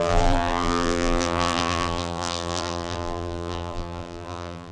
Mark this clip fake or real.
fake